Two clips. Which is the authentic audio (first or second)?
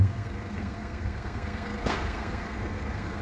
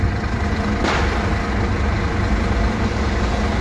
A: second